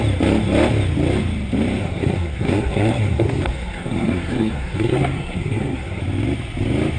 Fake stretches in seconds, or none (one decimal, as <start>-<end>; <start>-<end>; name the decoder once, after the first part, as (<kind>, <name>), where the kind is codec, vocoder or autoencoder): 1.8-6.0 (codec, SNAC)